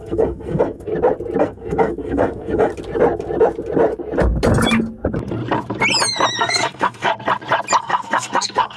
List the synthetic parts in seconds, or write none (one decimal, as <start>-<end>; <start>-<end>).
0.0-0.9; 1.4-2.7; 6.4-7.1; 7.8-8.8